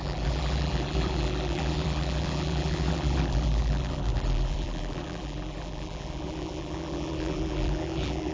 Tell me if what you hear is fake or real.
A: fake